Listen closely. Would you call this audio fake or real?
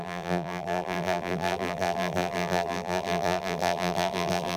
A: fake